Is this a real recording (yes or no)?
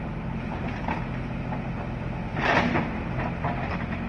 yes